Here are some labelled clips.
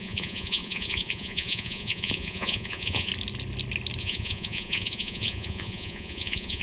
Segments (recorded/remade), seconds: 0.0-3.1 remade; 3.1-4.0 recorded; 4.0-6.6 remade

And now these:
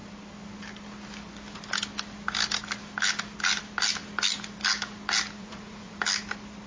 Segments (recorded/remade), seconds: 0.0-5.4 recorded; 5.4-6.0 remade; 6.0-6.7 recorded

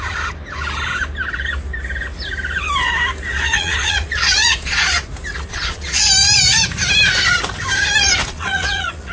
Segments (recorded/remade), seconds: 0.0-3.3 recorded; 3.3-4.8 remade; 4.8-5.5 recorded; 5.5-6.1 remade; 6.1-8.2 recorded; 8.2-9.1 remade

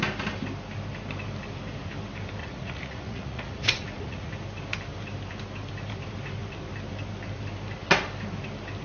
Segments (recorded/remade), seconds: 0.0-2.4 recorded; 2.4-4.3 remade; 4.3-8.8 recorded